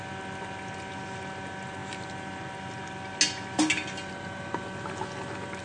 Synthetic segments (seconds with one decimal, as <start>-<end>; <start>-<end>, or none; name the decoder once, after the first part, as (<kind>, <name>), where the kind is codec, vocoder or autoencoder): none